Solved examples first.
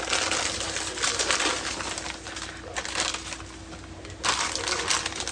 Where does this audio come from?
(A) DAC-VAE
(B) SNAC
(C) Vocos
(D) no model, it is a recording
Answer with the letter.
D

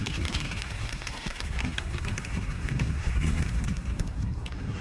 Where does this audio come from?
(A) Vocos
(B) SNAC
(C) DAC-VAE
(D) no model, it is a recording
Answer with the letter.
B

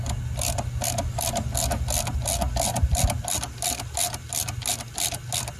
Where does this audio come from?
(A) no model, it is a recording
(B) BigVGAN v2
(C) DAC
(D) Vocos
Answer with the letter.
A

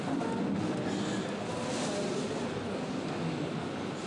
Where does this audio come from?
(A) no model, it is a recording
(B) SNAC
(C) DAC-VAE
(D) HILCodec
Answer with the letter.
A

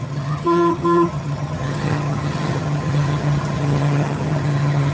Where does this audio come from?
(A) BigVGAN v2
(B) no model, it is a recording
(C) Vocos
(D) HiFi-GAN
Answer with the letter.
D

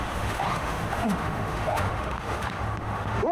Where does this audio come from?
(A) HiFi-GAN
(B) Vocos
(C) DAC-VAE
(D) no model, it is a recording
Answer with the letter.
C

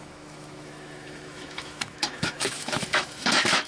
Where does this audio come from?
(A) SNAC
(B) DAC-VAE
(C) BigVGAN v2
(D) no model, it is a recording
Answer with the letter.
B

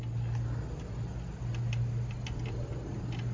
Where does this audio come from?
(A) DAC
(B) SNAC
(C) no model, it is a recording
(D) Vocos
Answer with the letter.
C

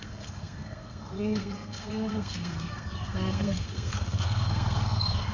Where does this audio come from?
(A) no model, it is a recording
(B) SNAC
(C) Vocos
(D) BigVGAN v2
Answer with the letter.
B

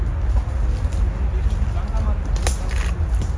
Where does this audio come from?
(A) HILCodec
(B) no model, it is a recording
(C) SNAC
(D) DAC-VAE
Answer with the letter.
B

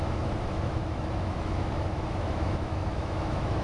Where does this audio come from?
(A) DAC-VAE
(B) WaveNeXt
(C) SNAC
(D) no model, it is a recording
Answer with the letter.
A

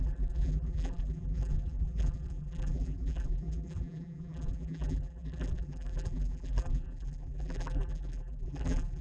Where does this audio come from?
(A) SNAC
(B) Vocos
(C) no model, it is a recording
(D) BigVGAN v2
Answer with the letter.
D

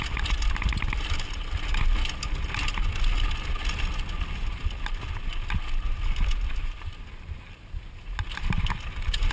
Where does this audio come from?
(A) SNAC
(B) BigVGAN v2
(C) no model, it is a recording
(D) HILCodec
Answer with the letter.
C